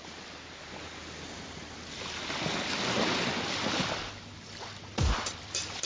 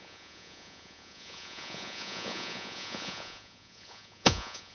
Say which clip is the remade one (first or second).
second